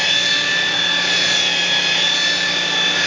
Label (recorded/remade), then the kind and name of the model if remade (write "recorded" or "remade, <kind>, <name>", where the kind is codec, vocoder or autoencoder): recorded